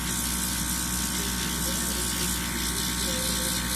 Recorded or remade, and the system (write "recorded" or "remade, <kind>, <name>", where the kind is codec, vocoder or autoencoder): recorded